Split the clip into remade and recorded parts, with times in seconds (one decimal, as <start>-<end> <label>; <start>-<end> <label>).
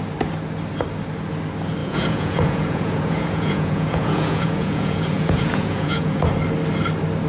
0.0-1.8 recorded; 1.8-6.2 remade; 6.2-7.3 recorded